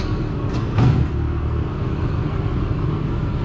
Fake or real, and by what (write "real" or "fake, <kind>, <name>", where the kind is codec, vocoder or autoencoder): fake, codec, SNAC